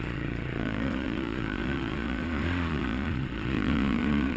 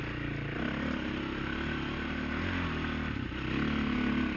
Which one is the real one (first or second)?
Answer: second